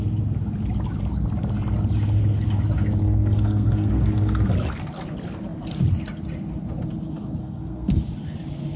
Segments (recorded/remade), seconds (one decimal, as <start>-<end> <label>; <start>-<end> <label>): 0.0-3.0 recorded; 3.0-4.5 remade; 4.5-7.4 recorded; 7.4-8.0 remade; 8.0-8.8 recorded